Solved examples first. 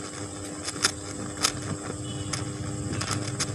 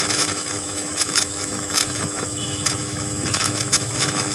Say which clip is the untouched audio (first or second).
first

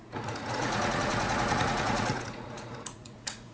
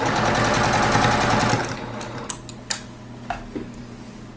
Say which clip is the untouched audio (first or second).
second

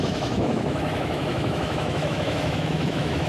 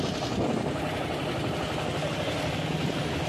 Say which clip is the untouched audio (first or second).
second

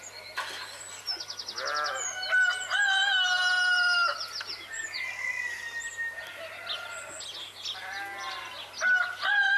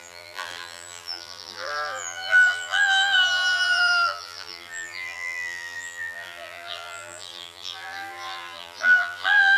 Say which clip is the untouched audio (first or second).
first